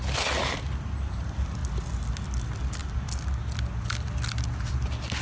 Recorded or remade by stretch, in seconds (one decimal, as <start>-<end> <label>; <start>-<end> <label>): 0.0-5.2 recorded